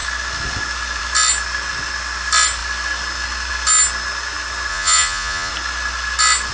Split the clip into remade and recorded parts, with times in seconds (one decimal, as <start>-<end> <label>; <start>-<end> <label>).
0.0-4.7 recorded; 4.7-5.5 remade; 5.5-6.5 recorded